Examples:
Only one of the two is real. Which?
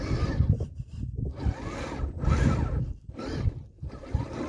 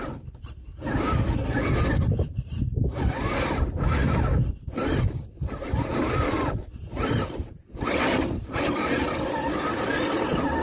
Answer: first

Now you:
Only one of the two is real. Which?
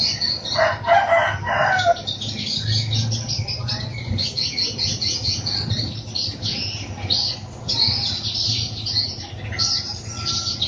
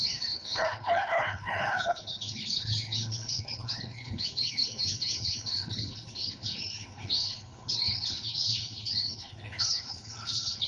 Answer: first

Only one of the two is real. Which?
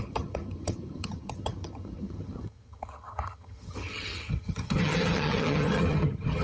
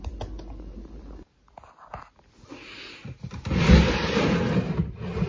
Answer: second